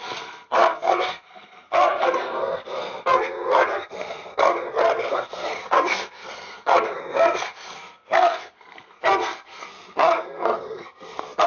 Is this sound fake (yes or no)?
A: yes